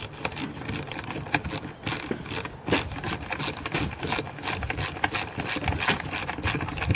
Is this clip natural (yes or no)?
yes